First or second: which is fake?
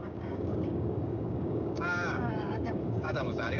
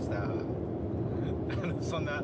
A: first